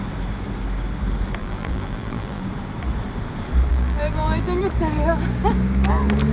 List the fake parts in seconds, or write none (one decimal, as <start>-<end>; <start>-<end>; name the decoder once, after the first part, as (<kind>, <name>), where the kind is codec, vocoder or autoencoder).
1.4-2.4 (vocoder, BigVGAN v2); 3.7-4.6